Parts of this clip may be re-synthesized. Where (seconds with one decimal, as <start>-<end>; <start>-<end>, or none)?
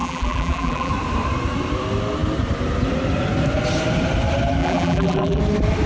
0.0-0.9; 4.6-5.4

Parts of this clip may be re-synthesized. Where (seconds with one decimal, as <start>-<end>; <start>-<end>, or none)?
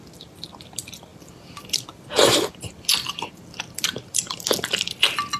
1.1-2.5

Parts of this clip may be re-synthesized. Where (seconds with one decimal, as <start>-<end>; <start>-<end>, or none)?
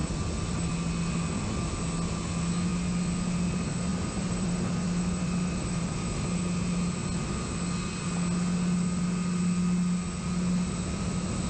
0.0-0.7; 3.9-6.4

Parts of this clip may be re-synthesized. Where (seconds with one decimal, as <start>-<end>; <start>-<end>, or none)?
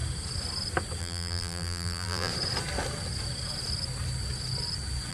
1.0-2.3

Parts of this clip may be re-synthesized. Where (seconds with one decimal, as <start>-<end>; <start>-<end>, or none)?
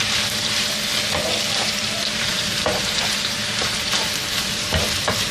0.0-0.9; 1.6-5.3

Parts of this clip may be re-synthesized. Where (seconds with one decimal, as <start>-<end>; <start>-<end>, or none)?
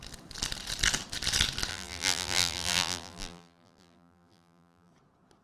1.7-4.9